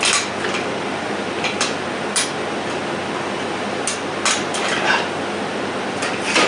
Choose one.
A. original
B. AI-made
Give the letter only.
A